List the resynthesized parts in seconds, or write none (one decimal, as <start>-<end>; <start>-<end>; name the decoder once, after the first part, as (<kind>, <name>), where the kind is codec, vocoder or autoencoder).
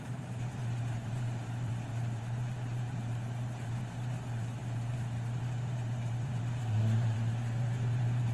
0.0-8.3 (vocoder, BigVGAN v2)